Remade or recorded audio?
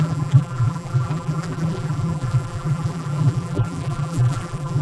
remade